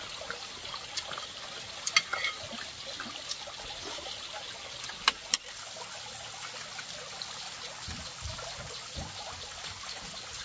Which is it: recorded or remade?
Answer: recorded